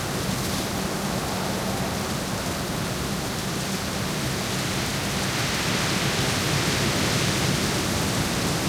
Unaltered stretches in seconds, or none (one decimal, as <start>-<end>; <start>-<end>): 0.0-8.7